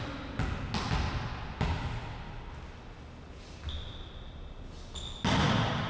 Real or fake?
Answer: real